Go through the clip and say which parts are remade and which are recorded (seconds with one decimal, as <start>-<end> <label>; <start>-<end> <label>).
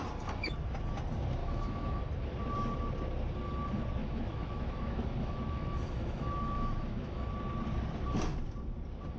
0.0-1.4 recorded; 1.4-2.0 remade; 2.0-4.0 recorded; 4.0-7.2 remade; 7.2-9.2 recorded